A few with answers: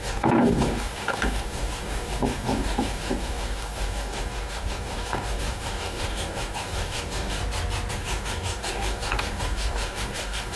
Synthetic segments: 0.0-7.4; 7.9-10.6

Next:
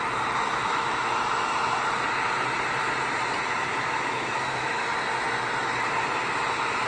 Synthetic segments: 0.6-1.2; 3.7-4.8